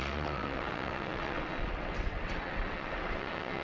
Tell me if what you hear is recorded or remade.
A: remade